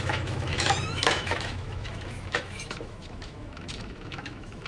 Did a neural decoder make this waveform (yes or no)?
yes